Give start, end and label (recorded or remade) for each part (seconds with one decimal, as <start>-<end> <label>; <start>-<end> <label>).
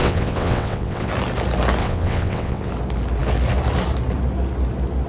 0.0-1.1 remade; 1.1-1.8 recorded; 1.8-2.7 remade; 2.7-5.1 recorded